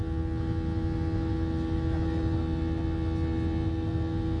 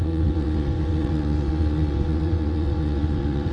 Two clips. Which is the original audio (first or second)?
first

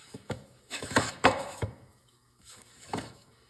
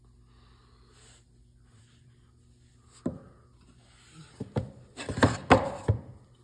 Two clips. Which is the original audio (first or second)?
second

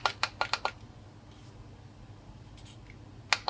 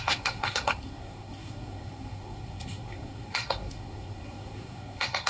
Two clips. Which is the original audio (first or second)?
first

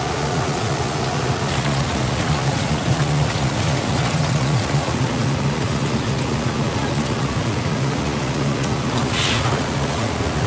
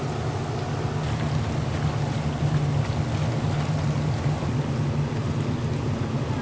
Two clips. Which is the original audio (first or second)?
second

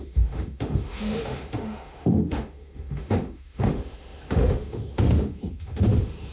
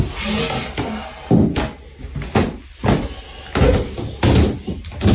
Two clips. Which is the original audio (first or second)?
second